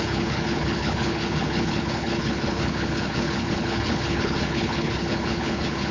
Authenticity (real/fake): fake